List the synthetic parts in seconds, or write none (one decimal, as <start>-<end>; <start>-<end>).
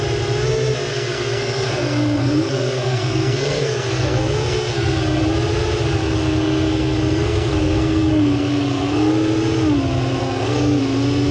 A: 0.9-5.2; 6.0-9.1; 10.2-10.8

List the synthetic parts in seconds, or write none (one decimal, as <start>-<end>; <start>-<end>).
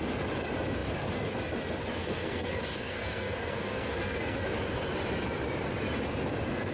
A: 2.0-4.4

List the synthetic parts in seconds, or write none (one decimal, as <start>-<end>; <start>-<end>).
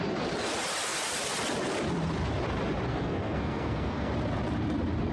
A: 2.9-4.1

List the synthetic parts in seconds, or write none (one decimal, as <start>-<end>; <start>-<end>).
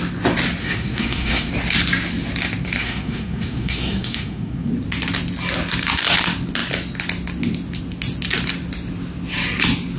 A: 0.6-1.5; 2.8-4.7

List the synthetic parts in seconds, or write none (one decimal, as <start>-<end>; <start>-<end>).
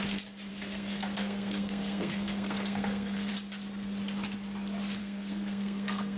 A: 0.5-3.3; 5.0-6.2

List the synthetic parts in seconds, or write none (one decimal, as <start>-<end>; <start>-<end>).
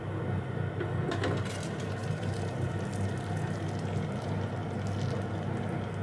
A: none